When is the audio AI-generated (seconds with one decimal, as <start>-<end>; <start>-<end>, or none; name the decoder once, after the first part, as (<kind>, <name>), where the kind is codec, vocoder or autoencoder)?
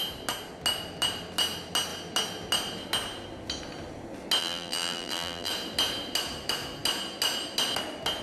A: 4.4-5.5 (vocoder, BigVGAN v2)